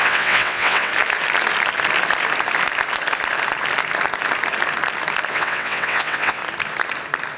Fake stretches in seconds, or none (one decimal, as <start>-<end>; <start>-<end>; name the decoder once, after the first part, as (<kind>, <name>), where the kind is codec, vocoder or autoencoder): 0.0-0.9 (vocoder, WaveNeXt); 5.3-6.4